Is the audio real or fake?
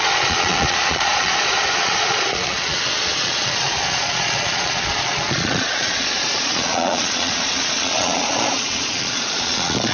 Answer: fake